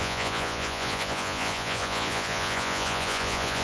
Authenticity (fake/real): fake